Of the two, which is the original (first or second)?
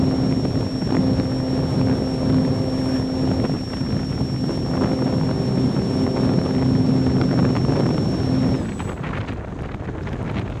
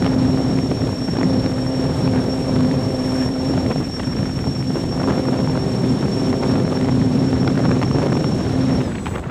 first